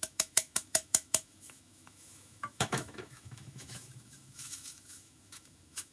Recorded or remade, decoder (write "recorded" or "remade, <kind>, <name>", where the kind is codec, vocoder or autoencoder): remade, autoencoder, DAC-VAE